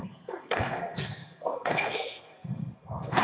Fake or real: fake